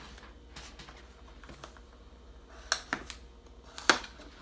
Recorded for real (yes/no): yes